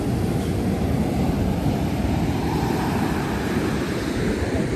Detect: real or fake real